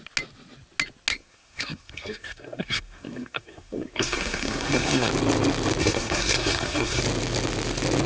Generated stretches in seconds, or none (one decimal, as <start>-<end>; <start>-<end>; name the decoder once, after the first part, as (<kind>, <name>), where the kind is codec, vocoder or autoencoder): 1.1-5.1 (codec, SNAC); 5.8-7.0